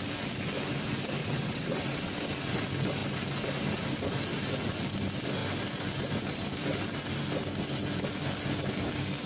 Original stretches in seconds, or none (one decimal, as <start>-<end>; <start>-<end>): 0.0-1.2; 2.1-9.3